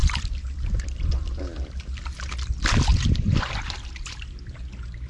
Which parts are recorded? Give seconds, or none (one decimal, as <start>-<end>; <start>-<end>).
0.0-2.9; 3.6-5.1